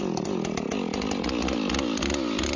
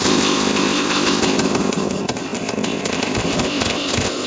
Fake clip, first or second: second